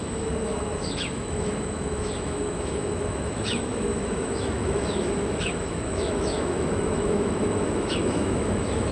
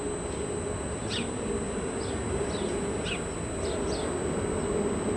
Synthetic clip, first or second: first